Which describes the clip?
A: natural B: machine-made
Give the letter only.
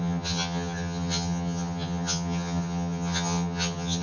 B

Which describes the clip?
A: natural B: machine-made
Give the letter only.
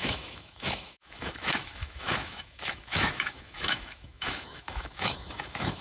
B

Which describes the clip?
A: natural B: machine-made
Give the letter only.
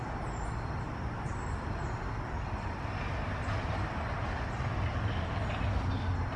A